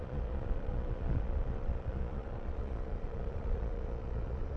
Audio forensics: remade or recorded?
remade